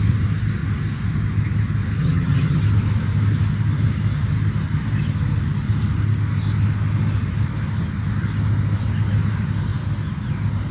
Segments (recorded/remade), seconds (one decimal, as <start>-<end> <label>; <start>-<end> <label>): 0.0-2.0 recorded; 2.0-2.6 remade; 2.6-10.7 recorded